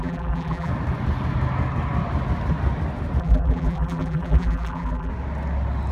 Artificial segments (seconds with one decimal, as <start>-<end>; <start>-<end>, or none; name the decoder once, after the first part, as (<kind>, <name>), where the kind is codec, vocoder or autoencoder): 0.0-0.7 (vocoder, BigVGAN v2); 3.2-5.1